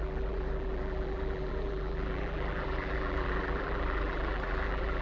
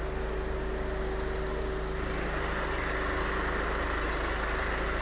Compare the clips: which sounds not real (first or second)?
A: first